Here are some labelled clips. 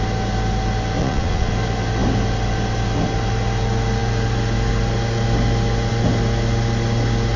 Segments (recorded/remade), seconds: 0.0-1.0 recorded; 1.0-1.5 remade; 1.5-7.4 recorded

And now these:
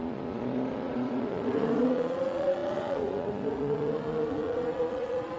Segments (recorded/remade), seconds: 0.0-5.4 remade

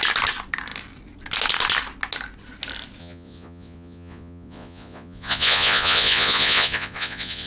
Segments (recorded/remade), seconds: 0.0-3.0 recorded; 3.0-7.5 remade

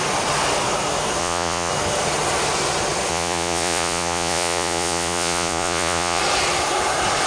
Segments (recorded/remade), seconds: 0.0-1.2 recorded; 1.2-1.7 remade; 1.7-3.1 recorded; 3.1-6.2 remade; 6.2-7.3 recorded

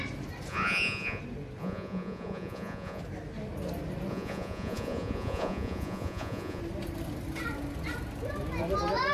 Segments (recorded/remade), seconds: 0.0-0.5 recorded; 0.5-1.2 remade; 1.2-1.6 recorded; 1.6-3.0 remade; 3.0-4.1 recorded; 4.1-6.6 remade; 6.6-9.1 recorded